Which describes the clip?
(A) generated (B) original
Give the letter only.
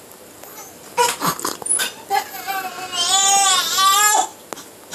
B